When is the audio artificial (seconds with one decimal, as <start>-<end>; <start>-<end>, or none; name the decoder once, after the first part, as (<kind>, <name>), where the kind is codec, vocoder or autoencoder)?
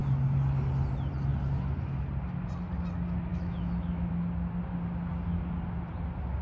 3.3-4.1 (autoencoder, DAC-VAE)